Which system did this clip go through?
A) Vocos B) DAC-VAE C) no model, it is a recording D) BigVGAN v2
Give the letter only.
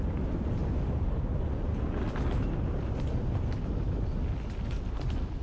C